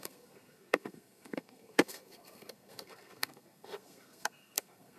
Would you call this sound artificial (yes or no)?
yes